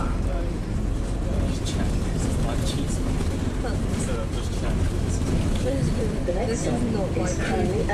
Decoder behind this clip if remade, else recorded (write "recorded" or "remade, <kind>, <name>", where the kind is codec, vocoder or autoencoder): recorded